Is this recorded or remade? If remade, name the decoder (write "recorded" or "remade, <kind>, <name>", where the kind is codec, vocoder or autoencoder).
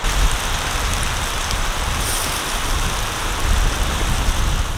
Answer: recorded